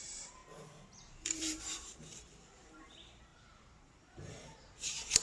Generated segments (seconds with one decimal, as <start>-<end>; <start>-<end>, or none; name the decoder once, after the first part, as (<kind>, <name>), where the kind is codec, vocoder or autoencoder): 0.0-0.4 (vocoder, BigVGAN v2); 1.1-5.2